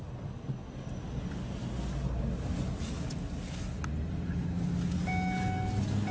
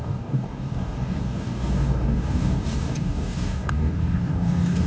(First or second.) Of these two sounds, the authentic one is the first